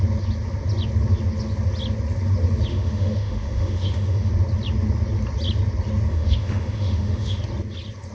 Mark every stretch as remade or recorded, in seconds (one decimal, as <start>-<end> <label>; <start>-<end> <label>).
0.0-2.7 recorded; 2.7-4.3 remade; 4.3-6.1 recorded; 6.1-7.4 remade; 7.4-8.1 recorded